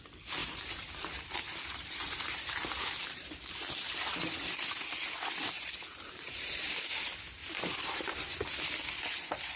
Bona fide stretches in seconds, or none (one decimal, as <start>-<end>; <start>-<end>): 0.0-0.4; 3.3-5.9; 6.7-7.4; 8.4-9.6